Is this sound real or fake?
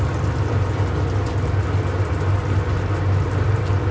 real